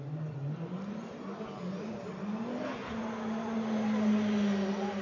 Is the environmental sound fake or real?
real